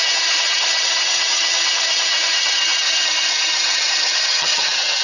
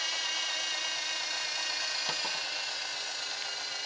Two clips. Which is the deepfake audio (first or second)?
first